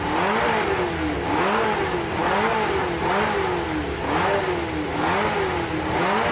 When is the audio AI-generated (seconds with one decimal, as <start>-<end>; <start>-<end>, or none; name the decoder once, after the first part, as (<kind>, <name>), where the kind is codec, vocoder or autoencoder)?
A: none